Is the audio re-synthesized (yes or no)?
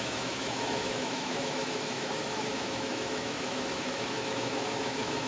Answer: yes